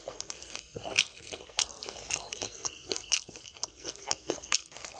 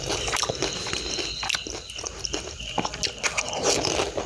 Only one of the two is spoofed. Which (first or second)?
first